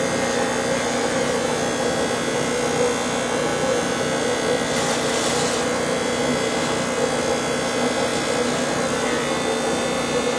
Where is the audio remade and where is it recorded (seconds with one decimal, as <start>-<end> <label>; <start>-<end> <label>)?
0.0-10.4 recorded